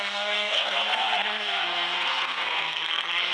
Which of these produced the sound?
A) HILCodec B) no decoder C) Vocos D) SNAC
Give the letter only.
D